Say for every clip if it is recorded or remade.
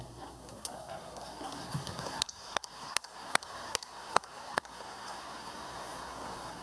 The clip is remade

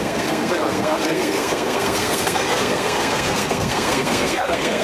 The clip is remade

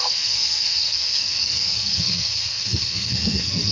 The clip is remade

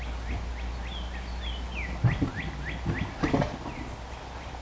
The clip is recorded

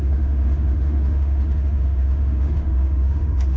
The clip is remade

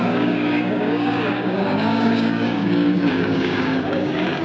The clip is remade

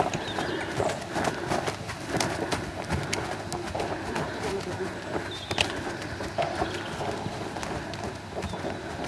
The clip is recorded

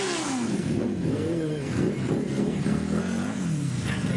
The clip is remade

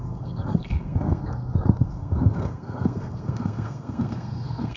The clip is remade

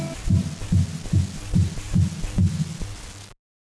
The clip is recorded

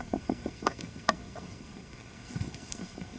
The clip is remade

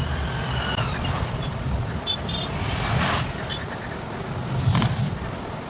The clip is remade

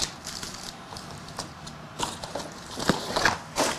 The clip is recorded